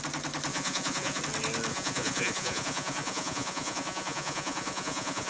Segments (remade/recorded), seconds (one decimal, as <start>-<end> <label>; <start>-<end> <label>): 0.0-0.5 recorded; 0.5-1.2 remade; 1.2-1.7 recorded; 1.7-5.3 remade